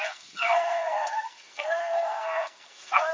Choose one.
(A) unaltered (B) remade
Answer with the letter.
B